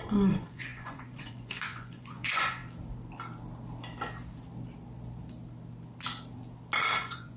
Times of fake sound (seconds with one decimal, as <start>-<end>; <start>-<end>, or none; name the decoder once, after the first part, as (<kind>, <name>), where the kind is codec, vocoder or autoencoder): 0.0-2.6 (vocoder, Vocos); 7.0-7.4